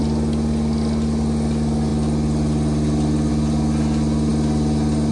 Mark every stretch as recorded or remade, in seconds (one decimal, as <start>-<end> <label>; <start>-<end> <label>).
0.0-5.1 recorded